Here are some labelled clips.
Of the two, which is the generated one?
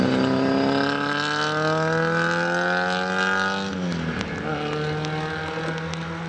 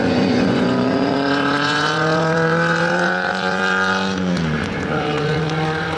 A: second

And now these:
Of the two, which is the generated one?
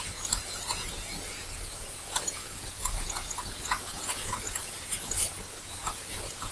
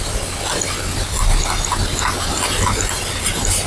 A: first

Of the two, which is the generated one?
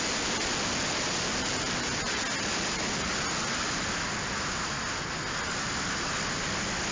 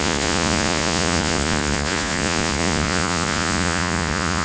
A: second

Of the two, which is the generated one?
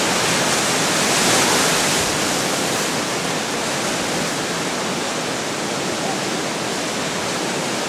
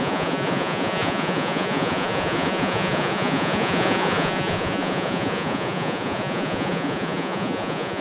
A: second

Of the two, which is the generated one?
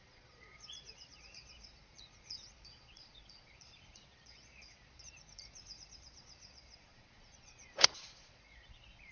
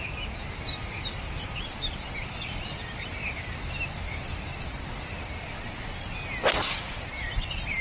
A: first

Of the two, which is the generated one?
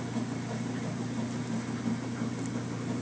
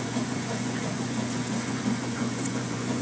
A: second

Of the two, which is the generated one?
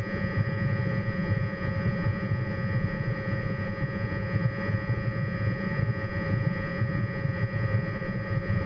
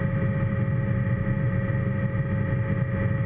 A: first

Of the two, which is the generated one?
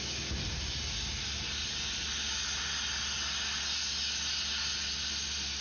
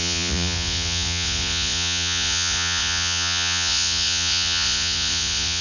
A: second